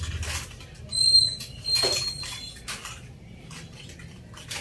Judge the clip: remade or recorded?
recorded